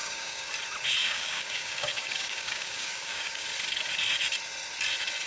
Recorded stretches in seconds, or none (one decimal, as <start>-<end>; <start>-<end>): 0.5-1.0; 3.4-5.3